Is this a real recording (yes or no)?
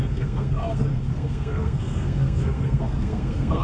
no